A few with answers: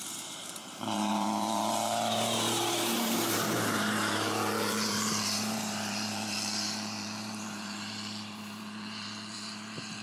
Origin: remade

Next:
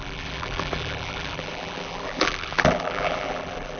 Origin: remade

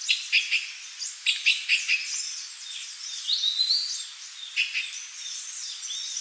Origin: recorded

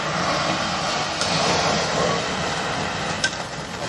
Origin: recorded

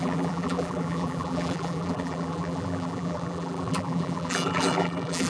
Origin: remade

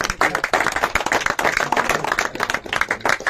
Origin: recorded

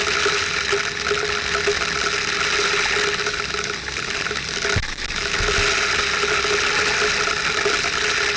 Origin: recorded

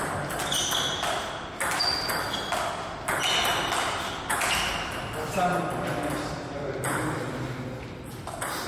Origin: recorded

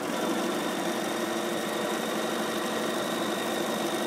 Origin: remade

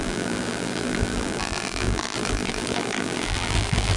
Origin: remade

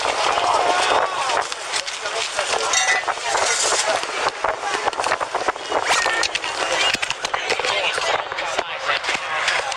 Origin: recorded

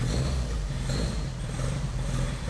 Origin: remade